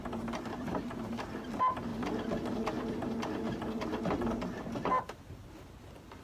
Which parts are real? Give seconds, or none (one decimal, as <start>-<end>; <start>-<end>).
0.0-6.2